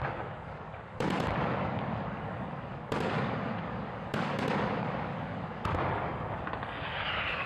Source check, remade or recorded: remade